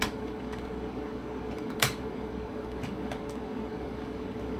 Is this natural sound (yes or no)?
no